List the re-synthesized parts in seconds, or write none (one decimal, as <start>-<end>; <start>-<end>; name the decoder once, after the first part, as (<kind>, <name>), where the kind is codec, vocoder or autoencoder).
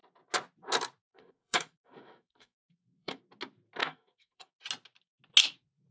1.1-3.2 (codec, SNAC); 3.8-4.5